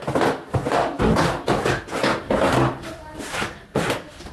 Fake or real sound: real